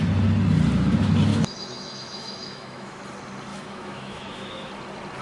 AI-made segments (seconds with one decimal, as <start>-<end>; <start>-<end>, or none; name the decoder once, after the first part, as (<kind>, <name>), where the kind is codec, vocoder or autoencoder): 1.3-3.0 (autoencoder, DAC-VAE); 3.5-4.7